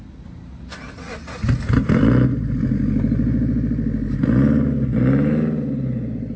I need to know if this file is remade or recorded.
recorded